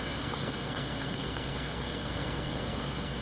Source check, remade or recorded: remade